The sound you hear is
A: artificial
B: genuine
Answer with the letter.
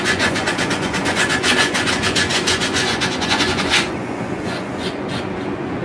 A